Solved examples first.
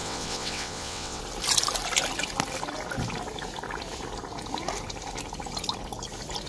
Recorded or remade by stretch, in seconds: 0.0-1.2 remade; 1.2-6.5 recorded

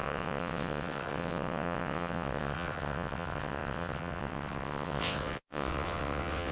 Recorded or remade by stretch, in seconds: 0.0-6.5 remade